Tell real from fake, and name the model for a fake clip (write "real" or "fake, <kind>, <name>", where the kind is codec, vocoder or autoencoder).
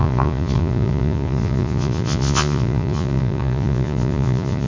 fake, vocoder, Vocos